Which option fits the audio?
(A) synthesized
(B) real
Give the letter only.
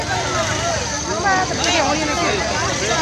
B